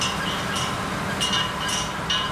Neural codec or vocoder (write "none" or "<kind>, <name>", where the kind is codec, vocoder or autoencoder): none